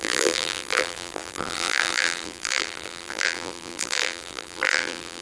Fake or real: fake